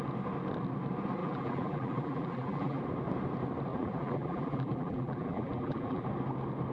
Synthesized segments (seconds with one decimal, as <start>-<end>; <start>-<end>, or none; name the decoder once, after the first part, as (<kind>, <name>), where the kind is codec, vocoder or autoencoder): 1.2-2.8 (vocoder, BigVGAN v2); 3.7-6.1